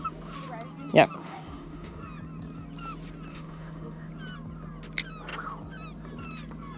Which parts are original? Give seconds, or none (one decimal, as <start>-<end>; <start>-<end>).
0.0-1.2; 2.0-3.3; 4.1-6.8